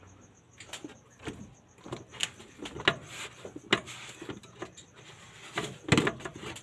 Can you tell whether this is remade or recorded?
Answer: recorded